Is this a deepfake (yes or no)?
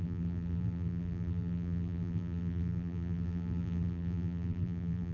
yes